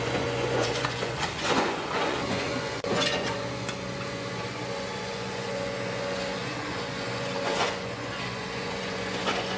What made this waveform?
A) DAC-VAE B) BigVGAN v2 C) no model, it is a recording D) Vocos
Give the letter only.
D